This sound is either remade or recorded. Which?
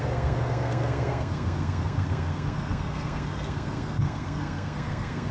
remade